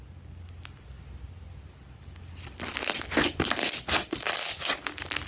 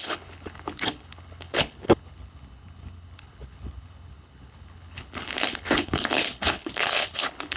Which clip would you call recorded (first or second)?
first